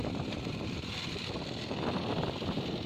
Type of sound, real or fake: real